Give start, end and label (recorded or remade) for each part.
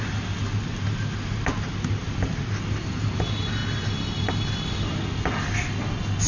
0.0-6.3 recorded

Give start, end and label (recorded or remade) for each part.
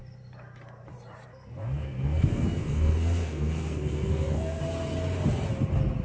0.0-1.3 recorded; 1.3-4.6 remade; 4.6-6.0 recorded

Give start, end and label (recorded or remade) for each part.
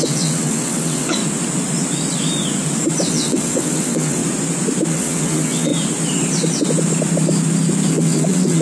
0.0-1.2 remade; 1.2-3.1 recorded; 3.1-4.2 remade; 4.2-4.9 recorded; 4.9-5.7 remade; 5.7-7.9 recorded; 7.9-8.6 remade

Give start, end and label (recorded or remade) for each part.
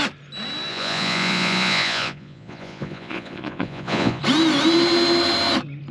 0.0-0.7 recorded; 0.7-4.2 remade; 4.2-5.9 recorded